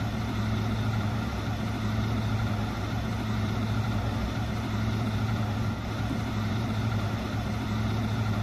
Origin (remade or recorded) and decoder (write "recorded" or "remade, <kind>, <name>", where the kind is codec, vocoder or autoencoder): remade, vocoder, BigVGAN v2